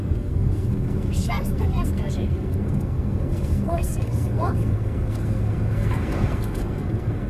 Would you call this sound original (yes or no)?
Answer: no